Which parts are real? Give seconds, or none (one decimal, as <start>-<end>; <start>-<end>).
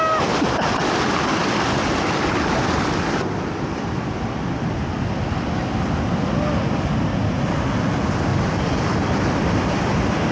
0.0-8.3; 9.4-10.3